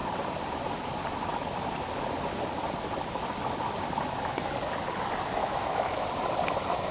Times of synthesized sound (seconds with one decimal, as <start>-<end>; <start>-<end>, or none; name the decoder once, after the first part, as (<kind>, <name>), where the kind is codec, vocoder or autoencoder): 5.4-6.0 (autoencoder, DAC-VAE)